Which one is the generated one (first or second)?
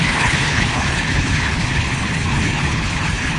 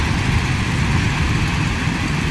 first